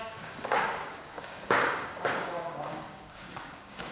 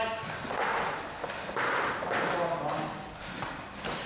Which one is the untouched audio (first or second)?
second